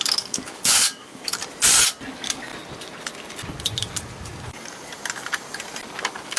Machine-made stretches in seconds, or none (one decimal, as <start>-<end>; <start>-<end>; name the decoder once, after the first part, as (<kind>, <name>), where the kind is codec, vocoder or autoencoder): 0.0-1.4 (codec, DAC); 2.1-2.5; 6.0-6.4